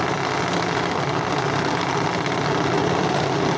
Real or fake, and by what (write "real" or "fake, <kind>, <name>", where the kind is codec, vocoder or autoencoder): real